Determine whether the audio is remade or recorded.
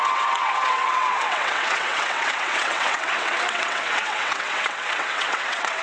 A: remade